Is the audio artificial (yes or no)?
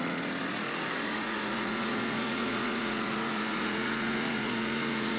yes